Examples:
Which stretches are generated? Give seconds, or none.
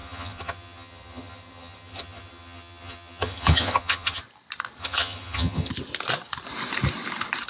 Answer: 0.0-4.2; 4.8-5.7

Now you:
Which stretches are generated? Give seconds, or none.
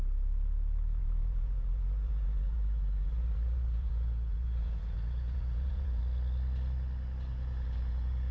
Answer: 1.0-6.0; 7.3-8.3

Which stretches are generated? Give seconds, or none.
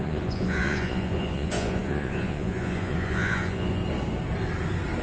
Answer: 0.0-3.8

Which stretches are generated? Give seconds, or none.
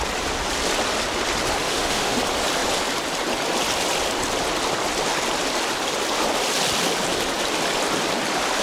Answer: 1.6-2.2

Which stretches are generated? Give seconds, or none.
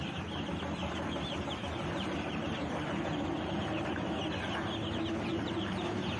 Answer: 0.8-3.9; 5.3-6.2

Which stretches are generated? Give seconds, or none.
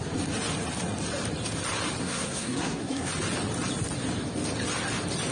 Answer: 2.0-3.1